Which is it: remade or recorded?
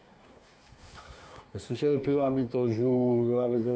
remade